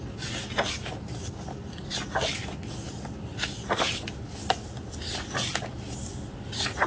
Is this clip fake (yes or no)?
no